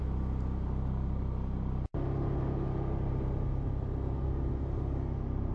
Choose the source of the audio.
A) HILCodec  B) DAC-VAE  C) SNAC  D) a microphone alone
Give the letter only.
D